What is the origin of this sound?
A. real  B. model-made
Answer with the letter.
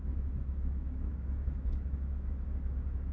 B